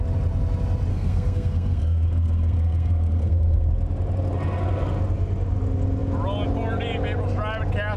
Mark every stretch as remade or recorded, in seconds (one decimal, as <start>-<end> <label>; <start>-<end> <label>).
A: 0.0-0.9 recorded; 0.9-3.7 remade; 3.7-8.0 recorded